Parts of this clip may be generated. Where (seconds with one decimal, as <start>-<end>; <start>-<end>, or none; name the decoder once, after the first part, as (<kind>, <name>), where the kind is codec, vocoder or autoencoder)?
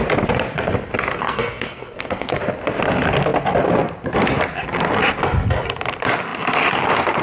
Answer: 1.1-2.4 (codec, SNAC)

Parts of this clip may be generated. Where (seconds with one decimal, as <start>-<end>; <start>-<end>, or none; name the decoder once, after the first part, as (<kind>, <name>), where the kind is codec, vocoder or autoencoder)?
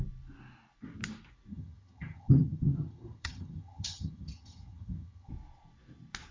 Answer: 1.5-5.3 (vocoder, HiFi-GAN)